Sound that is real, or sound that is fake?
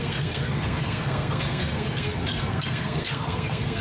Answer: fake